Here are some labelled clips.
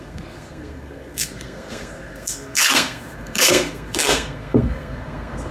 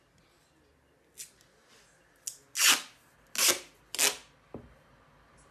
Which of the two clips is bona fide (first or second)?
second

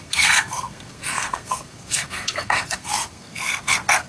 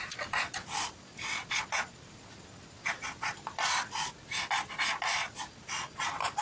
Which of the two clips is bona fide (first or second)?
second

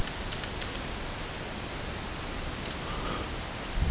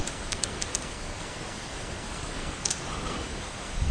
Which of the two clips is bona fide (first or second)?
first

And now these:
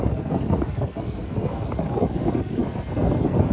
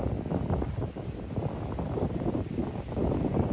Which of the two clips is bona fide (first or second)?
second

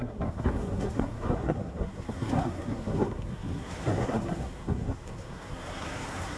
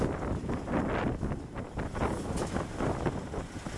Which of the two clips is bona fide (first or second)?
second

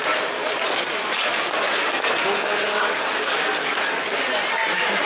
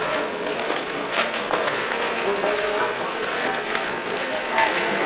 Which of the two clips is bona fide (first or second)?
first